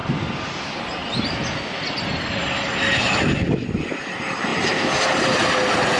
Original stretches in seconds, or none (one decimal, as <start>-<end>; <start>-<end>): 0.6-2.4; 4.0-4.5; 5.5-6.0